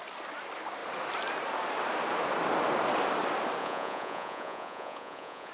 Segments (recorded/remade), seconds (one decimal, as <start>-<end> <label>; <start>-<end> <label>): 0.0-3.6 recorded; 3.6-5.5 remade